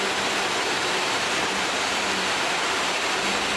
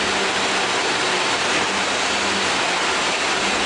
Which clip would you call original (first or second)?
second